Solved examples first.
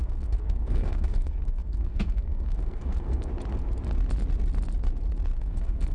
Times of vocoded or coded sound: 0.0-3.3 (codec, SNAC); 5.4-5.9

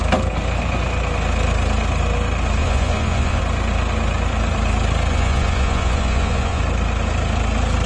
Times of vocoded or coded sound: 2.6-3.4 (vocoder, Vocos); 5.1-6.6

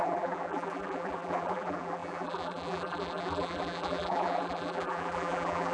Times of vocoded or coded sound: 0.0-5.7 (vocoder, BigVGAN v2)

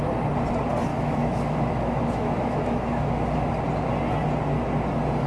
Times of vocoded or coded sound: 0.9-3.1 (autoencoder, DAC-VAE)

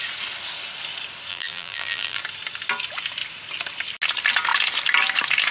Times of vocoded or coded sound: 1.3-2.2 (vocoder, BigVGAN v2)

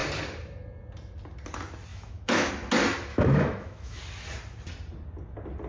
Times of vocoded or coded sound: 1.9-2.5 (autoencoder, DAC-VAE); 3.1-4.0

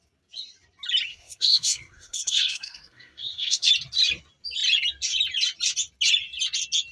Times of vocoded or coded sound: 1.1-3.7 (codec, SNAC)